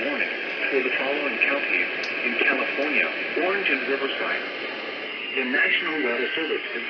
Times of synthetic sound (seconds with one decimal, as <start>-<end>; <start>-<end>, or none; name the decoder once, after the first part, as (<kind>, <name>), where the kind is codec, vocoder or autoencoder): 0.0-1.2 (codec, DAC); 5.1-6.9